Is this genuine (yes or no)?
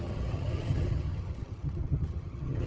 no